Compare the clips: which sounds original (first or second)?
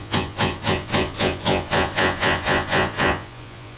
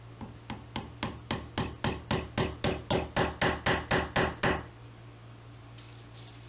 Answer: second